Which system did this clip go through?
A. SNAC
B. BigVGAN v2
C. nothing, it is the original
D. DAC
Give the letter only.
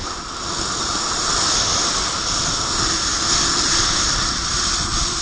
C